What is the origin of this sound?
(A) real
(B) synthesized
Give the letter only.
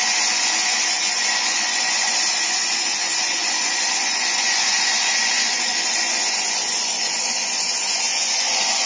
B